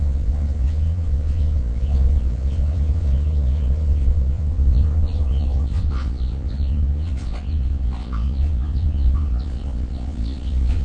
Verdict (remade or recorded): remade